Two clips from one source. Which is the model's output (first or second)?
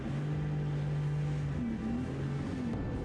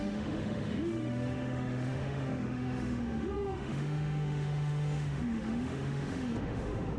second